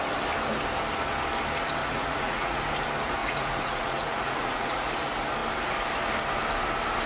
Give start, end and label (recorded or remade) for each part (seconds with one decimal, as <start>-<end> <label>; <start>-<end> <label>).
0.0-1.8 recorded; 1.8-2.6 remade; 2.6-3.2 recorded; 3.2-4.9 remade; 4.9-7.1 recorded